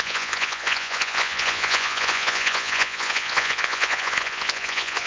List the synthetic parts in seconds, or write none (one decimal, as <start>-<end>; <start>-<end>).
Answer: 0.0-5.1